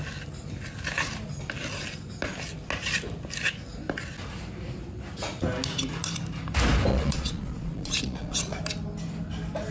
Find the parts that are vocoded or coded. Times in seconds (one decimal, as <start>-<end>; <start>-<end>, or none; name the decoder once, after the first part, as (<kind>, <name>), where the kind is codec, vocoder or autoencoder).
6.9-8.6 (vocoder, Vocos)